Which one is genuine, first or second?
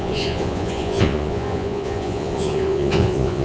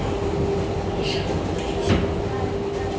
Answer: second